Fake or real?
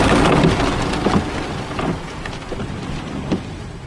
real